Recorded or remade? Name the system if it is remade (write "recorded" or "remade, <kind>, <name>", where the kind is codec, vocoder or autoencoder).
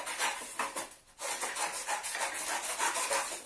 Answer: recorded